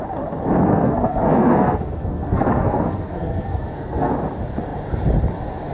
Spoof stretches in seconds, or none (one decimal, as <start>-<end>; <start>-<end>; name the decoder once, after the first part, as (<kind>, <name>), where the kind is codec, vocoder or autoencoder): 0.7-4.1 (codec, SNAC)